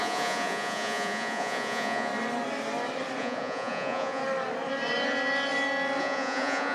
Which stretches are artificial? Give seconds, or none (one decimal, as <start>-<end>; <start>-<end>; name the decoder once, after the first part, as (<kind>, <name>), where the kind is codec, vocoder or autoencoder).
0.0-2.1 (vocoder, Vocos); 3.2-4.2; 6.0-6.7